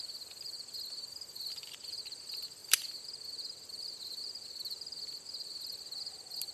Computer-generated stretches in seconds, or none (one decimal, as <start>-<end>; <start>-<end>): none